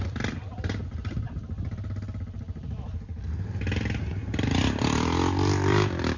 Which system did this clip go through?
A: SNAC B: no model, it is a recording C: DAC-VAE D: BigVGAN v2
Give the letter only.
D